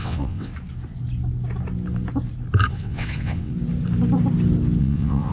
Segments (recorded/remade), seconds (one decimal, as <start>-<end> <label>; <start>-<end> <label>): 0.0-0.5 remade; 0.5-2.7 recorded; 2.7-3.5 remade; 3.5-4.8 recorded; 4.8-5.3 remade